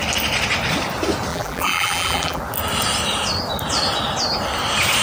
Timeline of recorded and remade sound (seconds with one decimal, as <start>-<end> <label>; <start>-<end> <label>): 0.0-1.3 recorded; 1.3-2.4 remade; 2.4-5.0 recorded